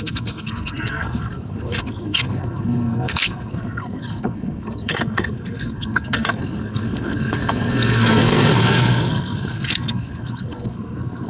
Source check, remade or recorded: remade